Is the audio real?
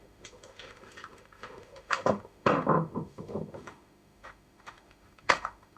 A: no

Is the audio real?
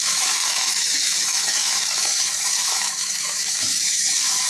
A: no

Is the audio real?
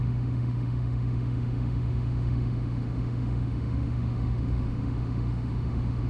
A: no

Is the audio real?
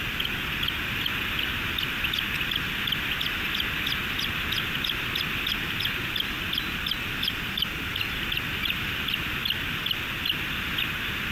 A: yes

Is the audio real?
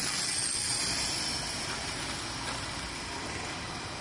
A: yes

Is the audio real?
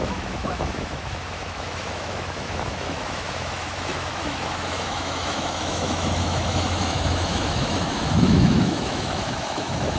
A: no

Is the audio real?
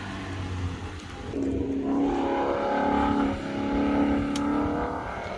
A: yes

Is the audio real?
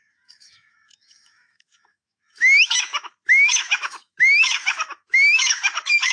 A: no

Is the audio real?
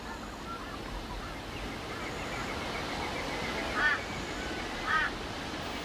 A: yes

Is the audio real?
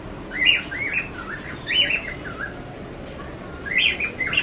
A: yes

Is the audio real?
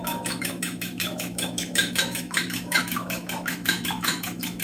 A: no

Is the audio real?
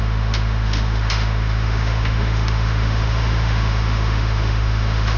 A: no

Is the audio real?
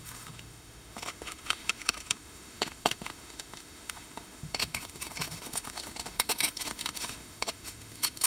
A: no